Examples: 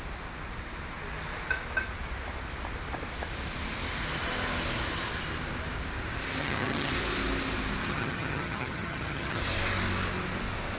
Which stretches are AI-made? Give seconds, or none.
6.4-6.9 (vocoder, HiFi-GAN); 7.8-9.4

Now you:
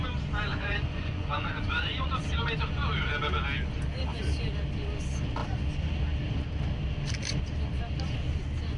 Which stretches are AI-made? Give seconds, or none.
0.5-2.2 (vocoder, Vocos)

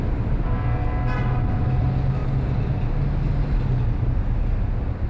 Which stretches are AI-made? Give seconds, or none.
none

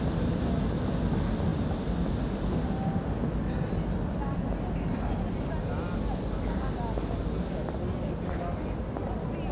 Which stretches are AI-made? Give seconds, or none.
none

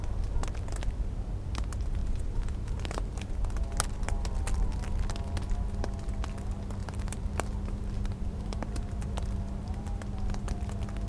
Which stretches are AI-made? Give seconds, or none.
2.0-3.3 (vocoder, BigVGAN v2); 6.8-10.0